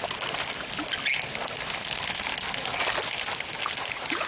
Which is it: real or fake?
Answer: real